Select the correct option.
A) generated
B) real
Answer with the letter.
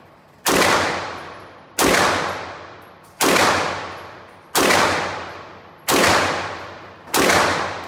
B